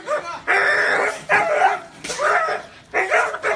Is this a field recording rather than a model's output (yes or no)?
yes